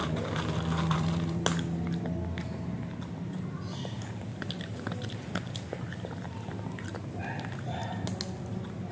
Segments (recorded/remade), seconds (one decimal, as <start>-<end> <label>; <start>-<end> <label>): 0.0-1.3 remade; 1.3-4.3 recorded; 4.3-7.4 remade; 7.4-8.9 recorded